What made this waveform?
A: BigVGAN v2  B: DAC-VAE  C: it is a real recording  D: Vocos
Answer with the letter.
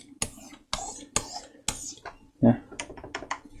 C